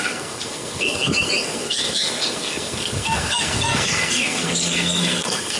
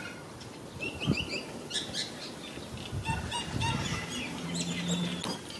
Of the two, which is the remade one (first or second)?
first